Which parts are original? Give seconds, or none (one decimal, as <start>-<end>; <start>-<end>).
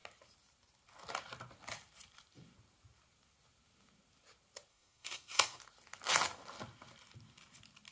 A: 0.0-4.7; 5.6-7.9